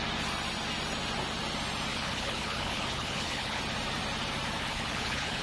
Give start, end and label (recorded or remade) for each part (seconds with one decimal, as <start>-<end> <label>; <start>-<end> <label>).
0.0-1.9 recorded; 1.9-3.6 remade; 3.6-4.7 recorded; 4.7-5.4 remade